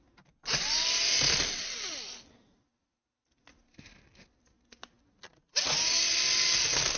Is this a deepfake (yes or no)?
no